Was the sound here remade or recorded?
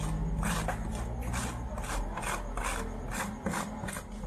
recorded